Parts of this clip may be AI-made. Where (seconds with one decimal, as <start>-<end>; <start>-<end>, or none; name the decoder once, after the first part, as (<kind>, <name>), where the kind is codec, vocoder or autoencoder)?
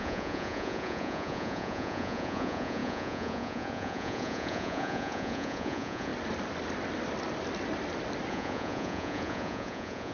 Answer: 0.0-6.1 (vocoder, Vocos); 8.3-10.1